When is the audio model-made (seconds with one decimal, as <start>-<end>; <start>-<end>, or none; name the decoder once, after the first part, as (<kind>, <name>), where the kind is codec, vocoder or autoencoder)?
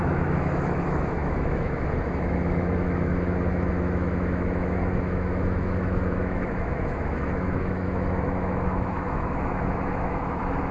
0.0-10.7 (autoencoder, DAC-VAE)